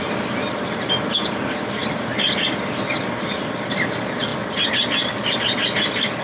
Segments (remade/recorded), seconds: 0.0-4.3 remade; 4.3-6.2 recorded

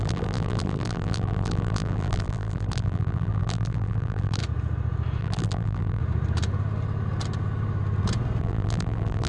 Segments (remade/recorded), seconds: 0.0-4.4 remade; 4.4-5.2 recorded; 5.2-6.0 remade; 6.0-8.4 recorded; 8.4-9.3 remade

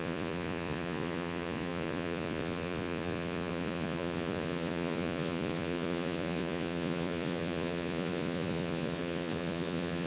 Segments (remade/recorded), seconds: 0.0-10.1 remade